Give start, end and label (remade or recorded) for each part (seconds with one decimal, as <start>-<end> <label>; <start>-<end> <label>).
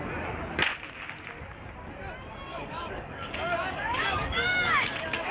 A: 0.0-2.5 recorded; 2.5-5.3 remade